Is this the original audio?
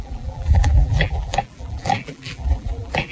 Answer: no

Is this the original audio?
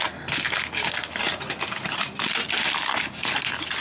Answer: yes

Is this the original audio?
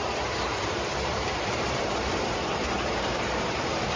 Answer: no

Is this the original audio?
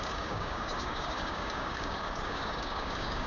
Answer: no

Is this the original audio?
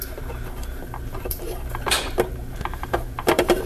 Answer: no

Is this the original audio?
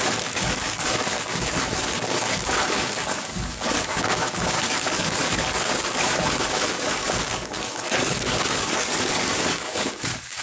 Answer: no